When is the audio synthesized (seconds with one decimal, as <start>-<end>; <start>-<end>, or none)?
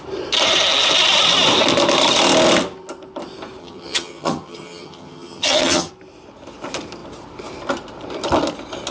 3.6-5.9